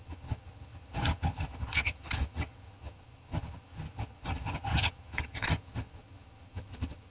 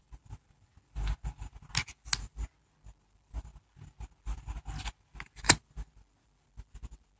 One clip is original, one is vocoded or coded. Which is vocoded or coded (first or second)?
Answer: first